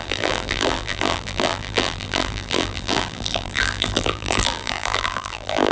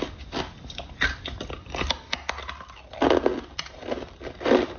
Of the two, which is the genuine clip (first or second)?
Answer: second